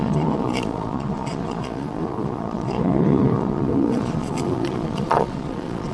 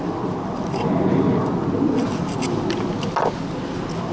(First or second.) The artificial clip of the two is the first